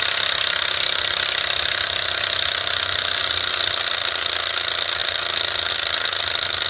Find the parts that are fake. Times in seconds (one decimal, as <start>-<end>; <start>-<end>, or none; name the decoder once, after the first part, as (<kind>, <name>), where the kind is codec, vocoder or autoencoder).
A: none